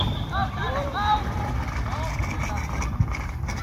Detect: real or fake fake